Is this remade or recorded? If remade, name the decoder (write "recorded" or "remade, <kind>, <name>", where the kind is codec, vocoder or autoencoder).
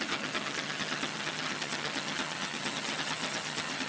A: remade, vocoder, HiFi-GAN